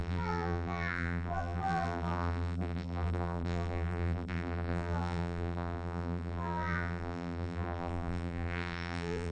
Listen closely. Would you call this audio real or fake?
fake